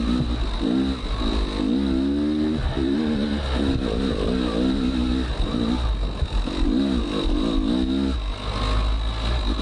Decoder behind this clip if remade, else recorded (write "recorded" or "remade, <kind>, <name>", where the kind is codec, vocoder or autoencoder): recorded